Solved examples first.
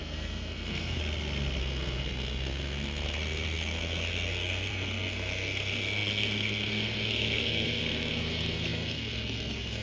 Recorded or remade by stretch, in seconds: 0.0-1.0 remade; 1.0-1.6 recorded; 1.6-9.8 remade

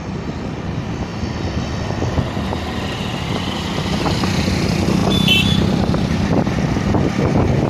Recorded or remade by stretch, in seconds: 0.0-7.7 recorded

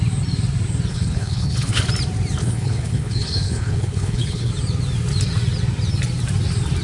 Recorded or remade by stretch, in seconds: 0.0-0.9 recorded; 0.9-1.8 remade; 1.8-2.4 recorded; 2.4-4.5 remade; 4.5-6.8 recorded